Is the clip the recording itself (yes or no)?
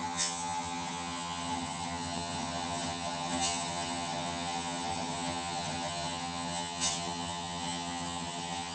no